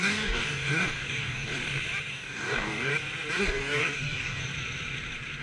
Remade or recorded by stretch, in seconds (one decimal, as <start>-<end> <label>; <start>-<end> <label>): 0.0-1.5 remade; 1.5-2.1 recorded; 2.1-2.9 remade; 2.9-3.4 recorded; 3.4-4.4 remade; 4.4-5.4 recorded